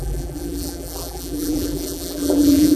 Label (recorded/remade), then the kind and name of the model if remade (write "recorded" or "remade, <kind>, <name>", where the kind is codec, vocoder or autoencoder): remade, vocoder, BigVGAN v2